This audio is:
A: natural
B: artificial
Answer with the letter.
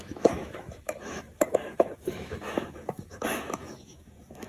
B